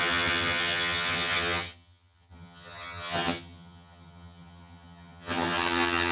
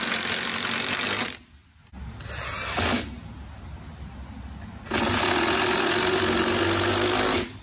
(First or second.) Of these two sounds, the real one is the second